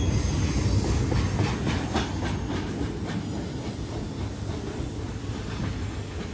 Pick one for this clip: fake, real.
real